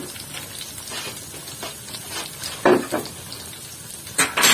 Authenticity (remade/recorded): recorded